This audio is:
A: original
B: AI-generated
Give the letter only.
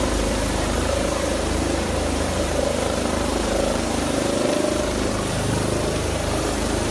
B